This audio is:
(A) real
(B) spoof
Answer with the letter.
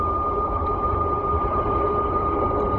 B